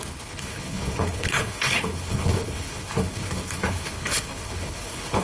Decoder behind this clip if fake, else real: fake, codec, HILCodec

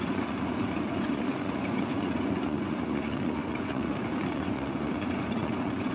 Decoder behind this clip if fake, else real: fake, vocoder, Vocos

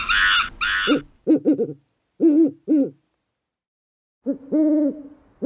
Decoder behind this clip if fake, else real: real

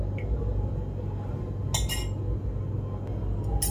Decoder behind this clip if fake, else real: real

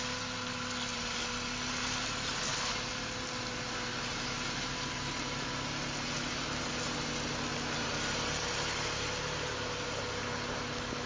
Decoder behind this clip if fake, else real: real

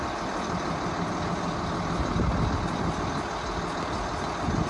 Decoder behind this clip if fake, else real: real